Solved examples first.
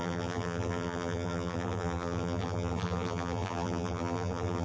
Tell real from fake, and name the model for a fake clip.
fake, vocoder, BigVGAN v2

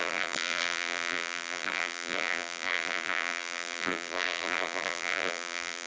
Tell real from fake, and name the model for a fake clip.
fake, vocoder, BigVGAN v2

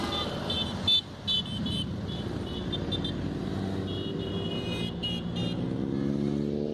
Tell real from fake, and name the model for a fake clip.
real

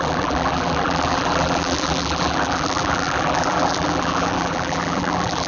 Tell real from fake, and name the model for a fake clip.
fake, vocoder, BigVGAN v2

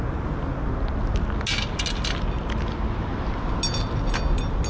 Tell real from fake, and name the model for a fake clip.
real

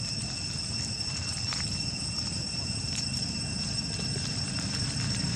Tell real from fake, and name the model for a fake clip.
fake, vocoder, BigVGAN v2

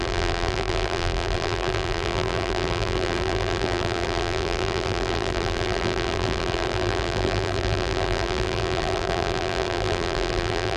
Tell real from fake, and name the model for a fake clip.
fake, vocoder, BigVGAN v2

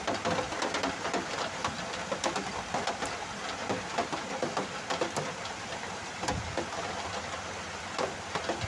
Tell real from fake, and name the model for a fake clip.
real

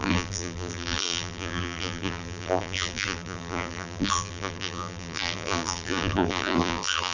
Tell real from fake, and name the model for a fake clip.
fake, vocoder, BigVGAN v2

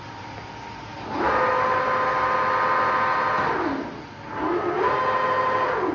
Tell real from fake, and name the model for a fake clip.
real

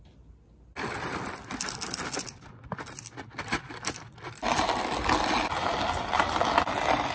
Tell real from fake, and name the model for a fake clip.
real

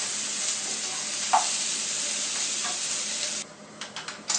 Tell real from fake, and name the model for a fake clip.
real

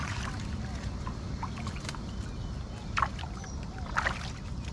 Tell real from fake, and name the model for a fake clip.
real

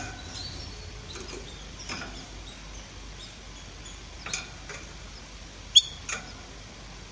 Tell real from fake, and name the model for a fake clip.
real